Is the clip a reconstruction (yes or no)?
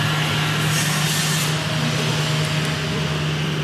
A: no